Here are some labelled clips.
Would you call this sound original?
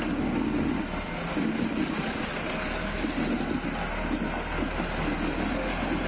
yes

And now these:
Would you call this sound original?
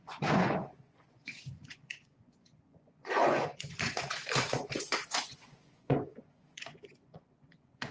no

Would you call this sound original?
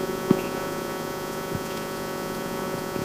no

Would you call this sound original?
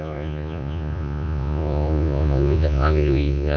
no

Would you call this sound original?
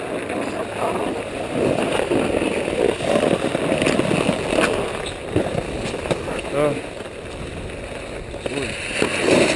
yes